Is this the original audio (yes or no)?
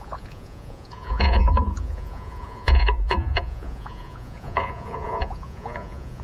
no